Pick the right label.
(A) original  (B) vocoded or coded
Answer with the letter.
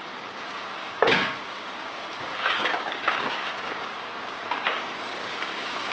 B